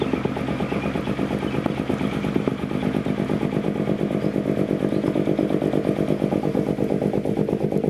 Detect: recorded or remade recorded